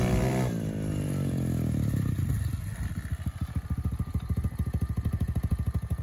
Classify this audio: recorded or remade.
recorded